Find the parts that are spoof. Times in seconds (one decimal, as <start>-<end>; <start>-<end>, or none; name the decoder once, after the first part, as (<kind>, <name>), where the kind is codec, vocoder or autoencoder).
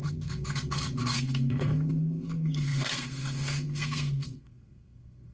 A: 0.0-5.3 (codec, SNAC)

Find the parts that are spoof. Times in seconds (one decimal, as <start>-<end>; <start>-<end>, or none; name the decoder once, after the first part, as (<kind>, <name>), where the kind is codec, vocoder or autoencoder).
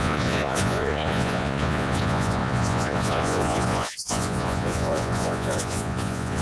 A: 0.0-6.4 (vocoder, Vocos)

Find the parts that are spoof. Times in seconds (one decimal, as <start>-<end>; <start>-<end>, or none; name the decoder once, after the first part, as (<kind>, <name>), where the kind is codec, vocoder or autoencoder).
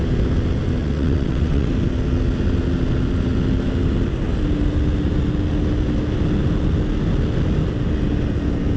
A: 0.8-1.7 (vocoder, WaveNeXt)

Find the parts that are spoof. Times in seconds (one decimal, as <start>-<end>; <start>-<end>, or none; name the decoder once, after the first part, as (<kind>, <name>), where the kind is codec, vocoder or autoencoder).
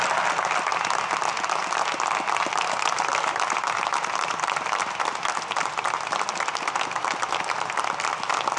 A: none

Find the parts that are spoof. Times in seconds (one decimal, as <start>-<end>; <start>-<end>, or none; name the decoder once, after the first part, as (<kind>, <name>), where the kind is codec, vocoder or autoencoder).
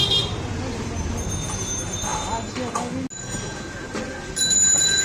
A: none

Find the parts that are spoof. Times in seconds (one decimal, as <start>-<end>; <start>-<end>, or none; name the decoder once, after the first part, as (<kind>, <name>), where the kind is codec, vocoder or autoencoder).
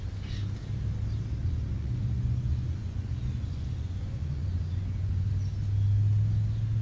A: 1.4-5.3 (vocoder, Vocos)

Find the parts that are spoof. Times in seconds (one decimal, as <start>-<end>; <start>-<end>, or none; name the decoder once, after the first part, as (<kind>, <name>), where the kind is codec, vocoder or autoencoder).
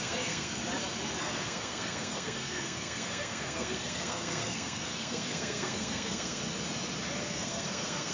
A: 0.0-0.6 (codec, SNAC); 1.2-6.4; 7.2-8.1